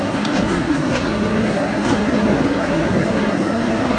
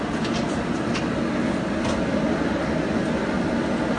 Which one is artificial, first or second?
first